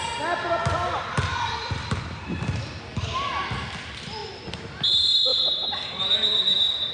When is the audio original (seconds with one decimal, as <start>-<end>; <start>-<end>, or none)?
0.0-1.3; 2.6-4.2; 4.7-6.9